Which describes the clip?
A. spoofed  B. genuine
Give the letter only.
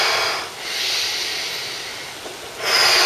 B